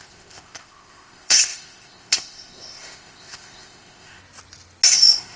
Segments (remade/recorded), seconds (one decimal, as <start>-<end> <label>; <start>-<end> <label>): 0.0-4.2 remade; 4.2-4.9 recorded; 4.9-5.4 remade